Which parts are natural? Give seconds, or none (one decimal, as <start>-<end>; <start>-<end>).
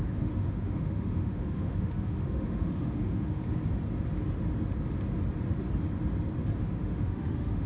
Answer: 3.4-6.6